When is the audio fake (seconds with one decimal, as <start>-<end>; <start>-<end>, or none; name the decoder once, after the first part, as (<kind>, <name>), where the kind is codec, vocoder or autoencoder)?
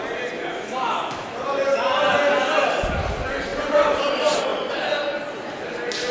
3.5-4.1 (vocoder, BigVGAN v2)